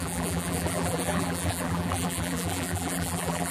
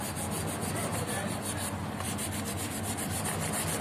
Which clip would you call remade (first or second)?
first